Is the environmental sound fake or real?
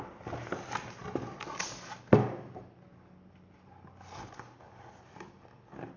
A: real